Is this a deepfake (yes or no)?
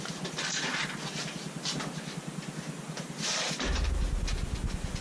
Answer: no